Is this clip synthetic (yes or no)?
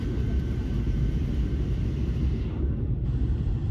no